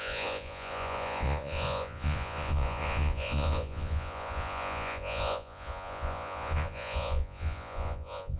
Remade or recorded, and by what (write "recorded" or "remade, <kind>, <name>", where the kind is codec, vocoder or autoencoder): remade, vocoder, Vocos